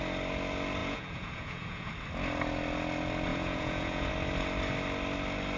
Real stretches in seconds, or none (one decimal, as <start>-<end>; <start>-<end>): 0.0-0.8; 1.9-3.3; 4.1-5.6